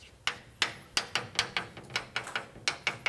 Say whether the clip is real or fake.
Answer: real